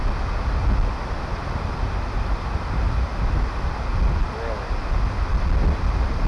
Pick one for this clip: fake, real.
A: real